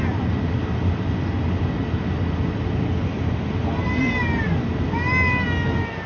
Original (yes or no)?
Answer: yes